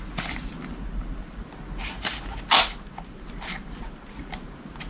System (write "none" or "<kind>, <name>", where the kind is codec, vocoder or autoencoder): none